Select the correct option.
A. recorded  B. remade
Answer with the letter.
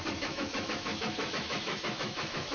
B